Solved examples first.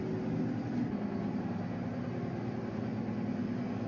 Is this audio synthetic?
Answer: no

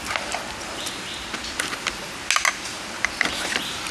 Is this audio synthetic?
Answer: no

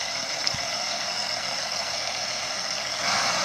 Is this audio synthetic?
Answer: yes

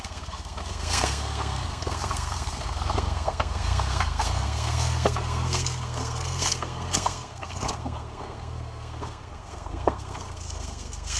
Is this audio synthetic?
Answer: yes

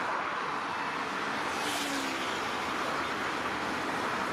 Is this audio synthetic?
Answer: no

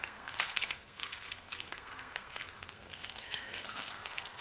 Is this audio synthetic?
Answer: yes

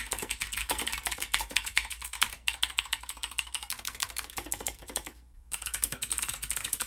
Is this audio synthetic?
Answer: yes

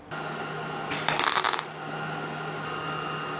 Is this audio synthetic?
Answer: no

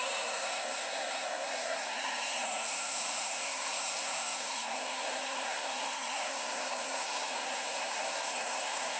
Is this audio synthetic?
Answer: yes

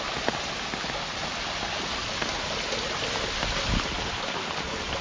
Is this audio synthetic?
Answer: no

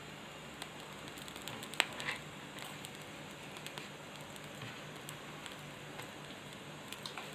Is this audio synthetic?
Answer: no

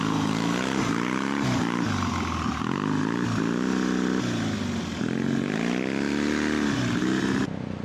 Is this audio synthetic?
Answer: no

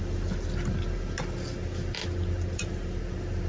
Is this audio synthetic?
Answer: no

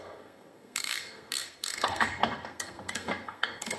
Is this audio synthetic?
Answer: yes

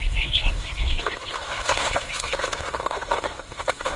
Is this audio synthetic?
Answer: yes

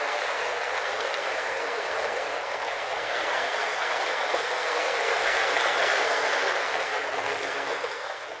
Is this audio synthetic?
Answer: yes